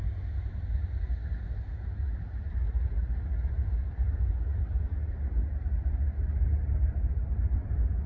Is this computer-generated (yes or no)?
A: no